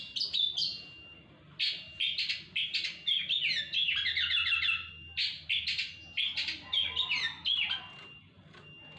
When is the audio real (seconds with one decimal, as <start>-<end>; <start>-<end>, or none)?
0.0-9.0